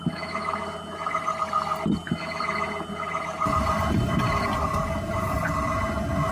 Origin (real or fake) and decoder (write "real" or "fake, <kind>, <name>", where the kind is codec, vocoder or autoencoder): real